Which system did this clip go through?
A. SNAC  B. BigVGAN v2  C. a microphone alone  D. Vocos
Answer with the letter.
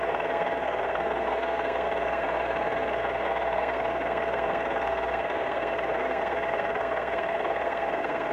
A